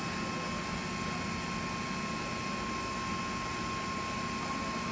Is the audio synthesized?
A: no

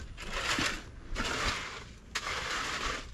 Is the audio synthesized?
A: no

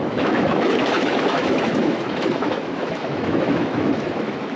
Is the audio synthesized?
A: yes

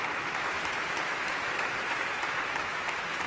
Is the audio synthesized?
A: yes